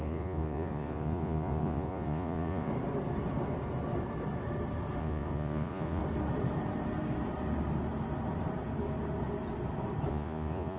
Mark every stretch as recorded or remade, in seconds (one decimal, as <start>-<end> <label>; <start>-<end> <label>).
0.0-2.7 remade; 2.7-5.0 recorded; 5.0-6.0 remade; 6.0-10.1 recorded; 10.1-10.8 remade